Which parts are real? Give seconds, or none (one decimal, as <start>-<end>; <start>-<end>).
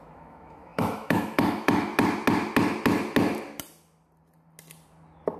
1.9-5.4